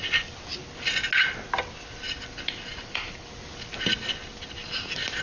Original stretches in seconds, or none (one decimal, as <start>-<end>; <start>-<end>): 0.0-2.7; 3.3-5.2